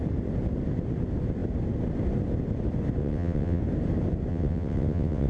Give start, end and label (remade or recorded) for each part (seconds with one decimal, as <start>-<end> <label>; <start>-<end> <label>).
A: 0.0-3.0 recorded; 3.0-3.6 remade; 3.6-4.3 recorded; 4.3-5.3 remade